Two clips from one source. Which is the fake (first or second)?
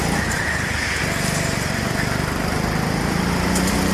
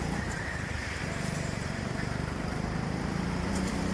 second